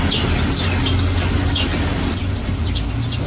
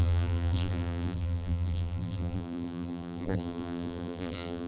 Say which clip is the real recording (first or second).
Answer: first